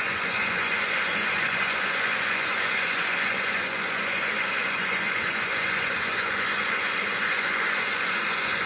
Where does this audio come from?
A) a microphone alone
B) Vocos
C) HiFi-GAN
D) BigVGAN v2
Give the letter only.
B